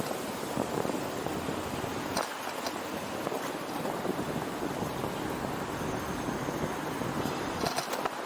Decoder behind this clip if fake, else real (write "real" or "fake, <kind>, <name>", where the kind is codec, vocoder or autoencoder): real